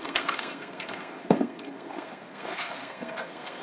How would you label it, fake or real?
fake